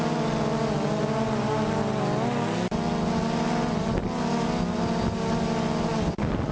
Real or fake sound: real